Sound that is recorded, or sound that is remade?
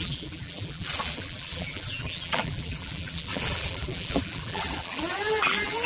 remade